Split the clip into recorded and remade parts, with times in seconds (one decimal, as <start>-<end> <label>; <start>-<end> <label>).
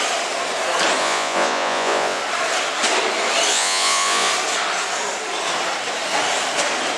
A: 0.0-1.0 recorded; 1.0-2.2 remade; 2.2-3.5 recorded; 3.5-4.3 remade; 4.3-7.0 recorded